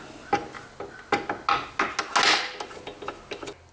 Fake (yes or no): no